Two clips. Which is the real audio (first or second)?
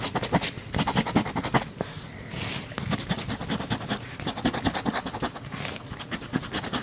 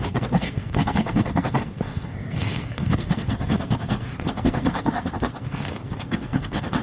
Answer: first